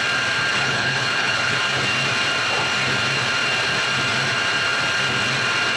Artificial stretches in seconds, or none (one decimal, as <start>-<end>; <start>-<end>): 0.5-1.6